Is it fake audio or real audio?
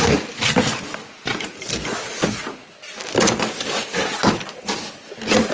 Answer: real